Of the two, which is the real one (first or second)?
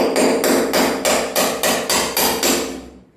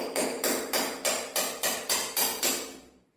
first